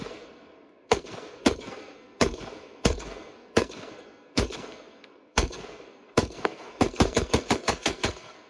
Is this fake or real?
fake